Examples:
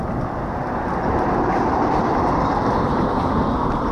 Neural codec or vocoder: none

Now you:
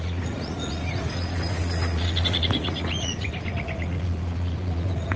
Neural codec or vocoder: vocoder, Vocos